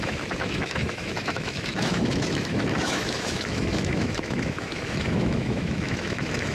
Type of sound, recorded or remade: remade